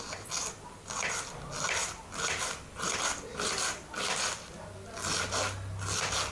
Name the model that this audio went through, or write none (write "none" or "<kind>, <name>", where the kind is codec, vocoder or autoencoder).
none